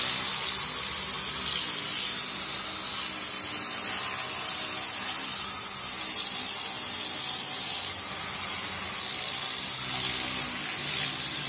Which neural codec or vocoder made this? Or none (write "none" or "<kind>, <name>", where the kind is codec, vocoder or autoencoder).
none